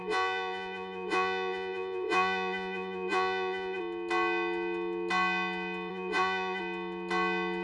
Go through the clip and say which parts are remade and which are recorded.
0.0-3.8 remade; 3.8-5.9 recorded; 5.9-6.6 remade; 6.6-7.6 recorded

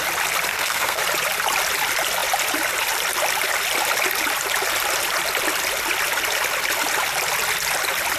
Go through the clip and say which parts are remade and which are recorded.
0.0-0.5 recorded; 0.5-1.0 remade; 1.0-8.2 recorded

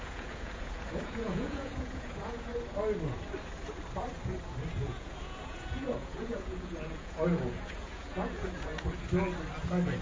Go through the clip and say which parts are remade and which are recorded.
0.0-2.5 remade; 2.5-4.7 recorded; 4.7-8.7 remade; 8.7-10.0 recorded

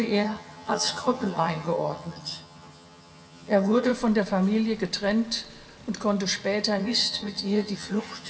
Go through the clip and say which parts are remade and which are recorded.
0.0-3.9 remade; 3.9-6.8 recorded; 6.8-8.3 remade